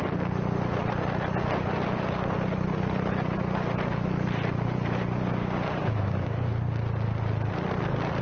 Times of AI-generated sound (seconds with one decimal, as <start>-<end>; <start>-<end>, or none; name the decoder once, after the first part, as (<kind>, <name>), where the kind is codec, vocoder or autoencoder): 5.4-6.5 (codec, DAC)